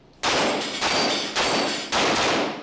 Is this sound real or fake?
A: real